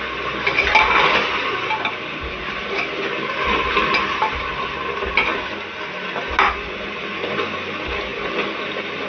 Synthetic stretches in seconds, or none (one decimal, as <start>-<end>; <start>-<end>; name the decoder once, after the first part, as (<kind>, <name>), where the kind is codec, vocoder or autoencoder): none